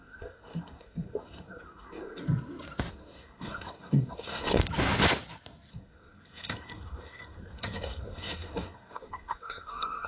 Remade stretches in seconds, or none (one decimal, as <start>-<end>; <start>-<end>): 0.0-2.2; 2.9-4.6; 5.7-10.1